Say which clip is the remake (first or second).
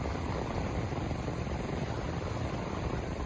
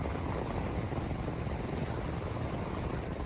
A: first